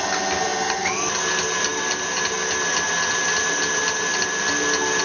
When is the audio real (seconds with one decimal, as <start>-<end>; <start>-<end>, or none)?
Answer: 0.0-5.0